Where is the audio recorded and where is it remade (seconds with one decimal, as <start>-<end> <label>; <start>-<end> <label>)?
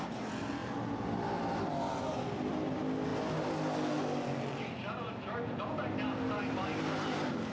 0.0-7.5 recorded